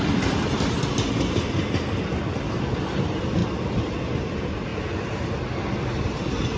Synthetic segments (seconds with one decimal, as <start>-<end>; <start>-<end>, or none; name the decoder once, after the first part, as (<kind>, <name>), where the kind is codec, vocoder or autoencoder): none

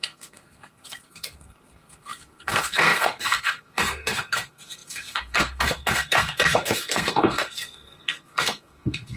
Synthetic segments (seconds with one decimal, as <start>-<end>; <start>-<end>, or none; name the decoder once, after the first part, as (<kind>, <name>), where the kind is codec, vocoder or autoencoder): 0.0-9.2 (codec, SNAC)

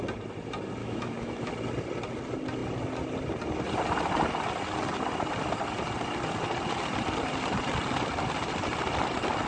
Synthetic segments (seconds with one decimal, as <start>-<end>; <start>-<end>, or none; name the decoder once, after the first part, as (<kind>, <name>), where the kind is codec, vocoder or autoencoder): 0.8-1.5 (autoencoder, DAC-VAE)

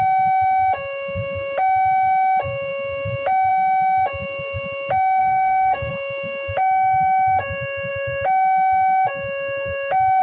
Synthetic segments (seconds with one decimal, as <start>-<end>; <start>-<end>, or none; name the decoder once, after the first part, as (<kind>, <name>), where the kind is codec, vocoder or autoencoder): 5.2-5.9 (codec, DAC)

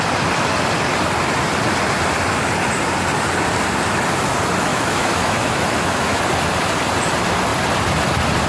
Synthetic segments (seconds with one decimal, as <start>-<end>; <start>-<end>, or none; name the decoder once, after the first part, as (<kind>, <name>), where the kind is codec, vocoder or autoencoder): 4.7-6.2 (autoencoder, DAC-VAE)